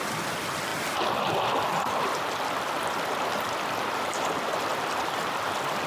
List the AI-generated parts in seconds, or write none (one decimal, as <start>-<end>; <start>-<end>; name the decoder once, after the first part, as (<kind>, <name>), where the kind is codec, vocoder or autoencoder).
0.7-2.2 (vocoder, BigVGAN v2); 4.7-5.2